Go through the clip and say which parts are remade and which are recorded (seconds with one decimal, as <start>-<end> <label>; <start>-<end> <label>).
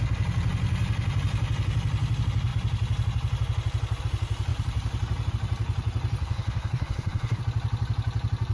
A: 0.0-6.2 recorded; 6.2-7.4 remade; 7.4-8.5 recorded